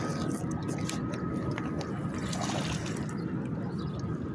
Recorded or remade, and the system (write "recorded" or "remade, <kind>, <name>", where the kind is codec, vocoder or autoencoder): recorded